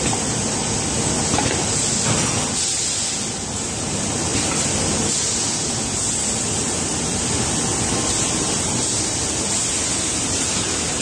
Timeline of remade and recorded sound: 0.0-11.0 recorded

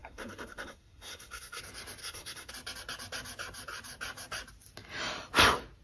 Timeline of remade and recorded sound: 0.0-1.6 remade; 1.6-2.0 recorded; 2.0-2.5 remade; 2.5-5.8 recorded

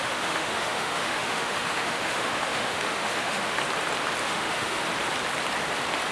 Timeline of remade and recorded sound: 0.0-3.6 remade; 3.6-4.2 recorded; 4.2-4.8 remade; 4.8-6.1 recorded

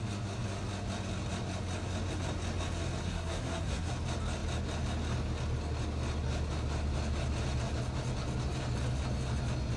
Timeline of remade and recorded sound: 0.0-3.0 recorded; 3.0-3.9 remade; 3.9-9.8 recorded